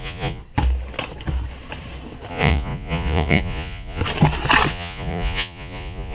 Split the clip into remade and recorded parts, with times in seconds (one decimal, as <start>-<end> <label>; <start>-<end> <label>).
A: 0.0-0.4 remade; 0.4-2.3 recorded; 2.3-4.0 remade; 4.0-4.7 recorded; 4.7-6.1 remade